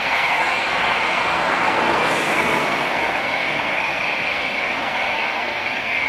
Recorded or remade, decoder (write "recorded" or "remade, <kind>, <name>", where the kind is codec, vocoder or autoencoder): remade, codec, SNAC